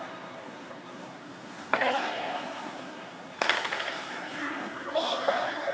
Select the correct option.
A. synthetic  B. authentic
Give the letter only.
A